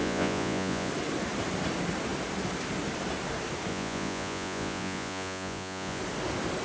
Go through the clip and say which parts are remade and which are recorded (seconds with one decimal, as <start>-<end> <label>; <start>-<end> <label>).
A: 0.0-0.9 remade; 0.9-3.7 recorded; 3.7-6.0 remade; 6.0-6.6 recorded